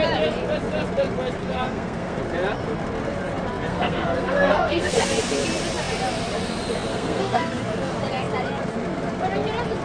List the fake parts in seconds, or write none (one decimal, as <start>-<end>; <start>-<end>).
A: 1.4-2.2; 3.7-5.1; 6.9-7.6